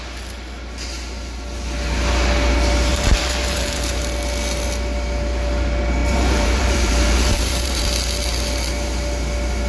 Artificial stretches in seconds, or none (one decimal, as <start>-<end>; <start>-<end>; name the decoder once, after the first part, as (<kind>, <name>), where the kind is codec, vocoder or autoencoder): 2.9-4.0 (vocoder, BigVGAN v2); 6.0-7.8